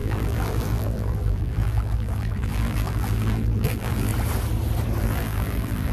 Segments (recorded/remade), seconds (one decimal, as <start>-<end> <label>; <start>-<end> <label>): 0.0-4.1 remade; 4.1-5.0 recorded; 5.0-5.9 remade